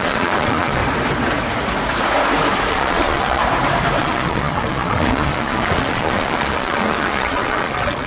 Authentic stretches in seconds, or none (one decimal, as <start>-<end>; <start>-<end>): 0.8-2.7; 3.4-4.0